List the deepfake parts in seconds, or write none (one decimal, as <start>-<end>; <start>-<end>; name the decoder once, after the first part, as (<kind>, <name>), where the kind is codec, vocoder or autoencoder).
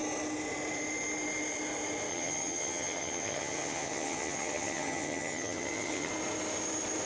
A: 2.1-6.1 (vocoder, HiFi-GAN)